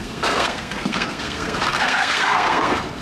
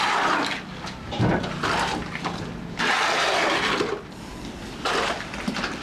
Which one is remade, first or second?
first